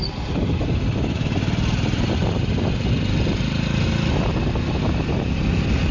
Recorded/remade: recorded